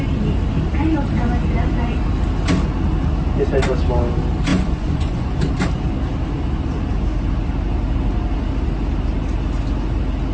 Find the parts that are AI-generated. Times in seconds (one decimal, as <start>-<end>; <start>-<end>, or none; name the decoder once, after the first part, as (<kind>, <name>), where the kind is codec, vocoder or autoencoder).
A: 4.5-5.3 (vocoder, Vocos)